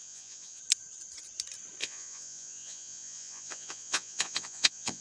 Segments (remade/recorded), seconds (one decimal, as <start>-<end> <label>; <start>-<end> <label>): 0.0-0.6 remade; 0.6-1.8 recorded; 1.8-5.0 remade